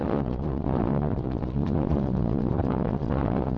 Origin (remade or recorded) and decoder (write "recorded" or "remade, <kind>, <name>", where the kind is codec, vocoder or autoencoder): remade, vocoder, Vocos